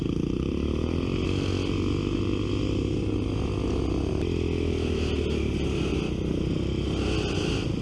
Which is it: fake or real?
real